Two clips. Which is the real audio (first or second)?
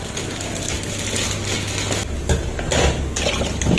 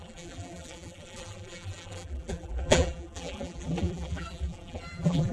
first